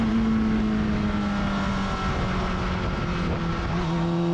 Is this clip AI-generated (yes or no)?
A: no